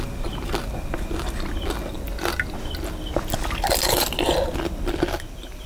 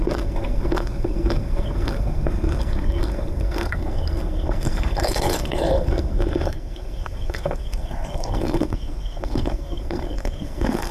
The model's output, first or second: second